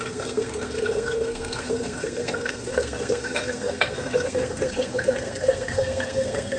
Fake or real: fake